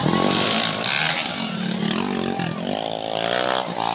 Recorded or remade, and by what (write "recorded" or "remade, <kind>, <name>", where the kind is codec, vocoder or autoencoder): recorded